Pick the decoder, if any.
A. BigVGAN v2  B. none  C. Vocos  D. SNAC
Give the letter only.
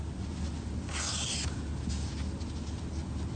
B